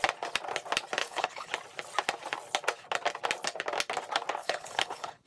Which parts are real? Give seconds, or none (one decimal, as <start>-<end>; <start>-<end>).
0.0-1.0; 1.5-4.4